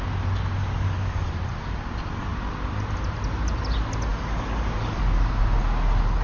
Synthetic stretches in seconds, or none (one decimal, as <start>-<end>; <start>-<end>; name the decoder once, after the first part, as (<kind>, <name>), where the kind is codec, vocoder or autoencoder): 0.6-1.3 (codec, DAC); 4.1-5.0